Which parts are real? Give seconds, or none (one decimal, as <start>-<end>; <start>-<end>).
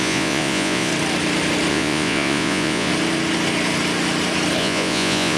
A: 0.9-1.7; 2.9-4.6